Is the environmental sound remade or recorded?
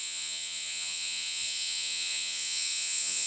remade